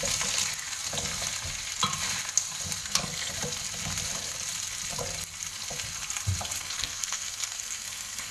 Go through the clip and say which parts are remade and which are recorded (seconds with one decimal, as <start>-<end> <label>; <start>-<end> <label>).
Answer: 0.0-2.8 recorded; 2.8-3.3 remade; 3.3-6.6 recorded; 6.6-8.3 remade

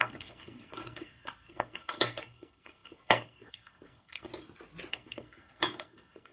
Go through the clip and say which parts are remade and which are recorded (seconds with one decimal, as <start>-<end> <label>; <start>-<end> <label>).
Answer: 0.0-4.3 remade; 4.3-4.9 recorded; 4.9-6.3 remade